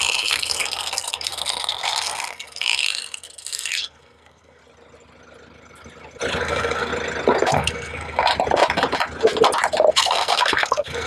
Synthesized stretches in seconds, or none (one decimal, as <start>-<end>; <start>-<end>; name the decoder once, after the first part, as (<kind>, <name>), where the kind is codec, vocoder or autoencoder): 0.0-4.6 (codec, SNAC); 6.4-6.9; 7.5-8.3; 9.9-11.1